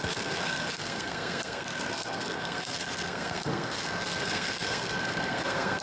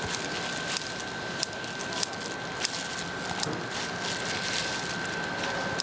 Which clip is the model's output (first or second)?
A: first